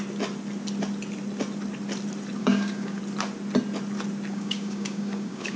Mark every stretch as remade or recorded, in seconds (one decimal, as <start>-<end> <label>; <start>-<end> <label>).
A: 0.0-2.4 recorded; 2.4-3.0 remade; 3.0-4.3 recorded; 4.3-5.6 remade